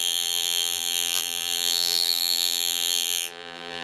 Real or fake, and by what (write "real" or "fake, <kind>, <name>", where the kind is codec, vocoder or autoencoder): fake, vocoder, BigVGAN v2